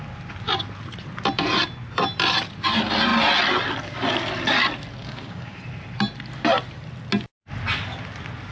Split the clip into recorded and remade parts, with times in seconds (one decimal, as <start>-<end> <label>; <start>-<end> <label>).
0.0-5.0 recorded; 5.0-5.6 remade; 5.6-8.5 recorded